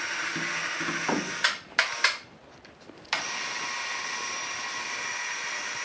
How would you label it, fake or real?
real